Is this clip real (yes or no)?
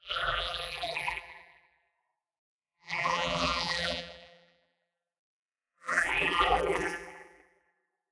no